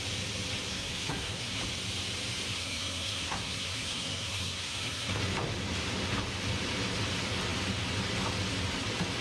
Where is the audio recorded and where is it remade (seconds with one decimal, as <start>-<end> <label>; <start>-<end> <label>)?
0.0-0.7 recorded; 0.7-1.6 remade; 1.6-2.5 recorded; 2.5-5.2 remade; 5.2-9.2 recorded